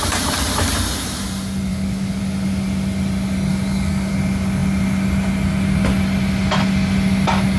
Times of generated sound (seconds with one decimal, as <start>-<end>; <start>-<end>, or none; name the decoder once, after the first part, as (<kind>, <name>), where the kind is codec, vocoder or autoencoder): 1.7-2.2 (codec, DAC); 3.5-4.1